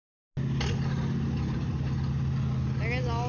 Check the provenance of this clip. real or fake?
real